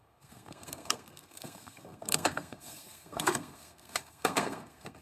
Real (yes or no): no